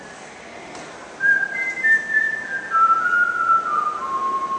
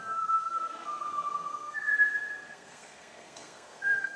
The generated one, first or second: second